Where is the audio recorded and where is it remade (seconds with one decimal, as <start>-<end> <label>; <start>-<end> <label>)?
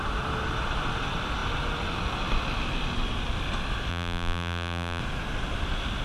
0.0-3.9 recorded; 3.9-5.0 remade; 5.0-6.0 recorded